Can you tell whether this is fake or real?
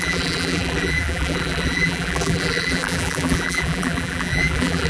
fake